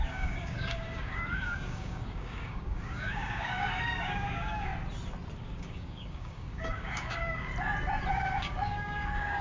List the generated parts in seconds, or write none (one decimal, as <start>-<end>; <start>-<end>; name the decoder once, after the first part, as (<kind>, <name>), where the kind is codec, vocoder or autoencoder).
0.0-4.7 (codec, DAC); 5.4-7.5; 8.1-9.4